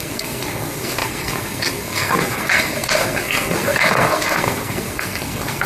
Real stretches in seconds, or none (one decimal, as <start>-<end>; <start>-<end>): none